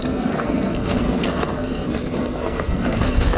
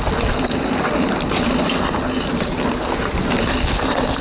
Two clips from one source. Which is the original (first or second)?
second